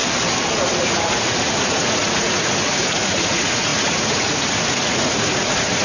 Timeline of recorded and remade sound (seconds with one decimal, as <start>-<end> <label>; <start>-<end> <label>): 0.0-0.8 recorded; 0.8-5.8 remade